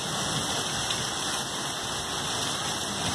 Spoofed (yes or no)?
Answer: no